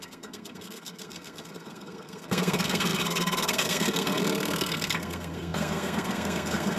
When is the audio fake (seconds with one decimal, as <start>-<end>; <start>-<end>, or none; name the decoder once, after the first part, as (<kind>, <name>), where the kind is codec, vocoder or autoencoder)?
0.0-6.8 (codec, SNAC)